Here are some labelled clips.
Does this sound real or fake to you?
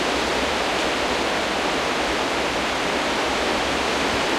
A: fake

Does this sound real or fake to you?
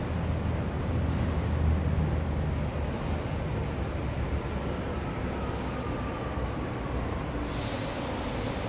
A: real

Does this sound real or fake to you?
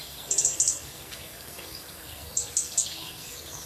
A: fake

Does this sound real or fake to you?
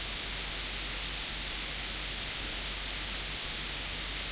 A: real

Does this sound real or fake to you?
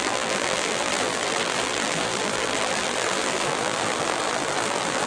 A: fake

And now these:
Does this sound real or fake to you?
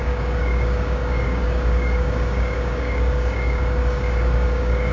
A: fake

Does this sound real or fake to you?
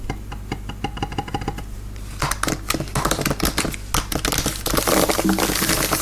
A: real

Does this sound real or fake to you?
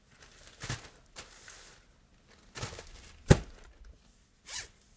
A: real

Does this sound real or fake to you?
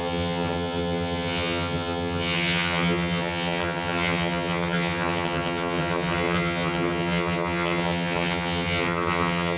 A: fake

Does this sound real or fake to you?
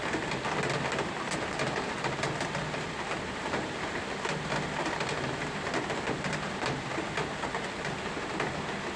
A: real